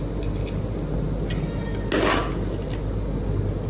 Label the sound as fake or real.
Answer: real